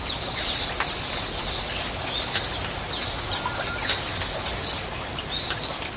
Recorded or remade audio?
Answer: recorded